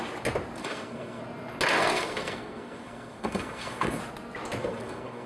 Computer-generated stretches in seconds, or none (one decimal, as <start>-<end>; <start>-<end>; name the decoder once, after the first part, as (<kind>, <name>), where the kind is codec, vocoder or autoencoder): 0.6-1.2 (codec, SNAC); 1.8-4.0; 4.6-5.3